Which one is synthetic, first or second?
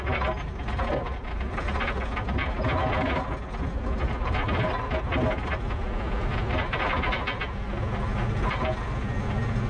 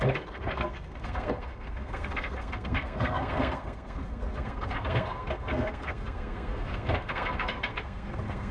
second